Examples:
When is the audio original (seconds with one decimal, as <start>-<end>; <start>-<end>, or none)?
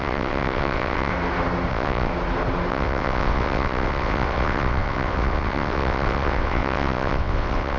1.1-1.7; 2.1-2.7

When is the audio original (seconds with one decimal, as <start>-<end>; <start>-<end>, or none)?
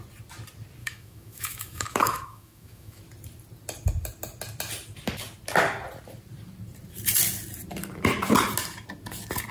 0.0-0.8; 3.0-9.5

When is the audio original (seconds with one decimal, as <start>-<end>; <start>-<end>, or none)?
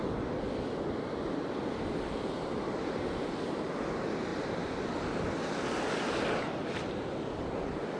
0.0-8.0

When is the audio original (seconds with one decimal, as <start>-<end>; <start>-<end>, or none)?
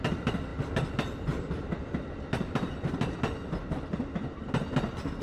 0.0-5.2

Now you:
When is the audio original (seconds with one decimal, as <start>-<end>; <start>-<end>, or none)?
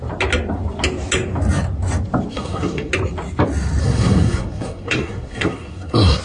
0.0-2.3; 2.9-3.8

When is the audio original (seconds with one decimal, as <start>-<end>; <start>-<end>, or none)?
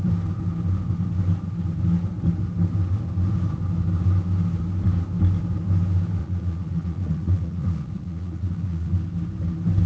0.0-6.2; 8.9-9.9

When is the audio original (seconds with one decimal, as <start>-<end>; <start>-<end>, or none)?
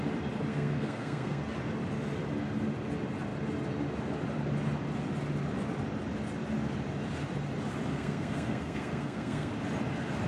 0.0-0.5; 1.4-7.9; 9.5-10.3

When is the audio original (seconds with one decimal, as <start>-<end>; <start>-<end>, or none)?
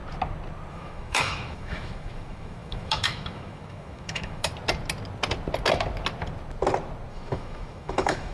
0.0-0.7; 4.5-7.1